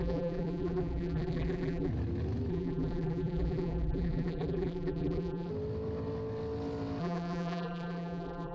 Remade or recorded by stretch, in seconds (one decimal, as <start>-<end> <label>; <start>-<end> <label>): 0.0-1.9 remade; 1.9-2.5 recorded; 2.5-5.5 remade; 5.5-7.0 recorded; 7.0-8.5 remade